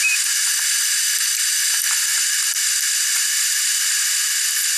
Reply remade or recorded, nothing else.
recorded